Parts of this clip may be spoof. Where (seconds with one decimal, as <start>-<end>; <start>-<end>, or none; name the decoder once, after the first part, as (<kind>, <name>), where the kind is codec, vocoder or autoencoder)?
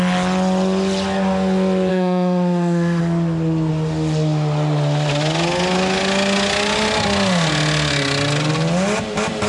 1.9-3.0 (autoencoder, DAC-VAE)